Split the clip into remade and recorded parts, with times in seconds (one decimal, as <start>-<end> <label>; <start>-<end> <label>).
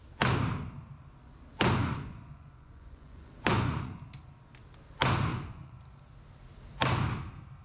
0.0-1.8 recorded; 1.8-4.0 remade; 4.0-5.3 recorded; 5.3-5.8 remade; 5.8-7.6 recorded